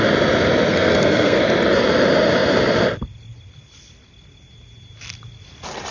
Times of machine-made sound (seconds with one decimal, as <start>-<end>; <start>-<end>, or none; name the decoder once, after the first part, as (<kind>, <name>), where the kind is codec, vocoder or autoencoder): 0.7-1.4 (codec, SNAC)